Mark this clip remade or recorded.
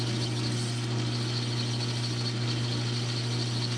recorded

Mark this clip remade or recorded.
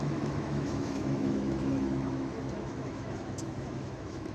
remade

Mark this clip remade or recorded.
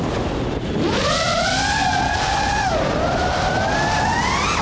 recorded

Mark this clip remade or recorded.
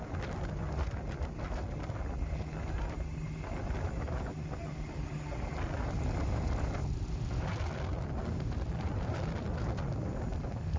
recorded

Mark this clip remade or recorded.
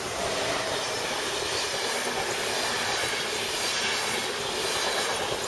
recorded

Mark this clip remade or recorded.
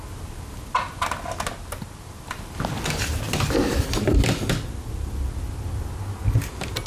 recorded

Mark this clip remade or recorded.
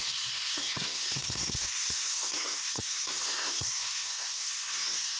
remade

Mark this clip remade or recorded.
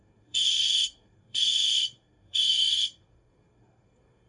remade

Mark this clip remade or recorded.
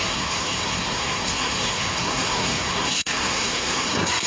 remade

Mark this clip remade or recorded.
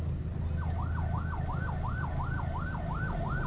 recorded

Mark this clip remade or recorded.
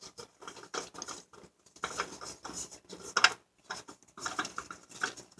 recorded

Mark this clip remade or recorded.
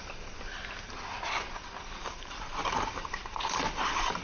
remade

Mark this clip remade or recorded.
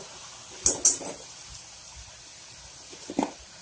recorded